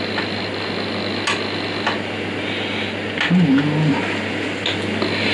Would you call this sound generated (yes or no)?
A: no